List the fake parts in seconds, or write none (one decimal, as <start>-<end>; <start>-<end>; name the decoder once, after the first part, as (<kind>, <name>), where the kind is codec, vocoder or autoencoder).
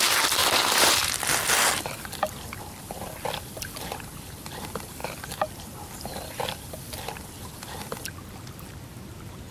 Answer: 0.0-0.4 (vocoder, BigVGAN v2); 3.4-5.0; 5.8-9.5